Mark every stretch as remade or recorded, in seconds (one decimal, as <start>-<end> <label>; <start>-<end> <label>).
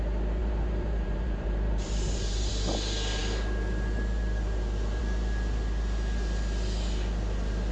0.0-0.4 recorded; 0.4-2.5 remade; 2.5-7.7 recorded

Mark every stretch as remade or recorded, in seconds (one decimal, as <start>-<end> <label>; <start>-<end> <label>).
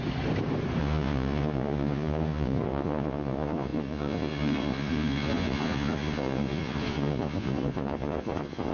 0.0-0.8 recorded; 0.8-8.7 remade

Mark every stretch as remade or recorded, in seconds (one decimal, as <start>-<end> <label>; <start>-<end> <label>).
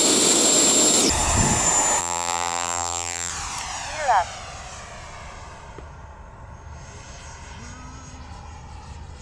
0.0-2.0 recorded; 2.0-3.3 remade; 3.3-9.2 recorded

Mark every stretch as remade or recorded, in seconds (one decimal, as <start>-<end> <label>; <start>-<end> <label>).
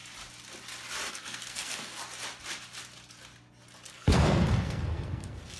0.0-1.1 recorded; 1.1-2.0 remade; 2.0-3.9 recorded; 3.9-5.6 remade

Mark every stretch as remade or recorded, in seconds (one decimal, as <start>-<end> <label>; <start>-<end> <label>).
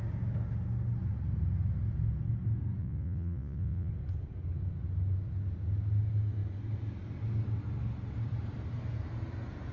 0.0-2.8 recorded; 2.8-3.9 remade; 3.9-9.7 recorded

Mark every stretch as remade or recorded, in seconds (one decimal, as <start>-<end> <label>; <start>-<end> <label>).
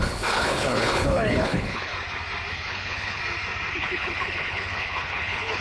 0.0-1.9 remade; 1.9-2.5 recorded; 2.5-3.2 remade; 3.2-3.7 recorded; 3.7-5.6 remade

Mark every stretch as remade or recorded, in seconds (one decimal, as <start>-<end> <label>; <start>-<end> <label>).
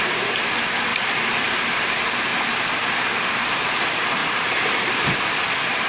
0.0-0.9 recorded; 0.9-1.8 remade; 1.8-4.2 recorded; 4.2-5.9 remade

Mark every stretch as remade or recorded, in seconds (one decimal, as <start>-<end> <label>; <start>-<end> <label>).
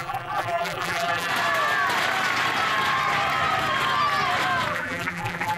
0.0-1.3 remade; 1.3-4.7 recorded; 4.7-5.6 remade